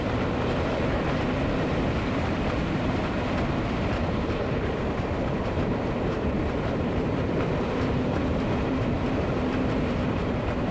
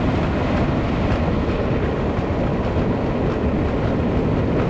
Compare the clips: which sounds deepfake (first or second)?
first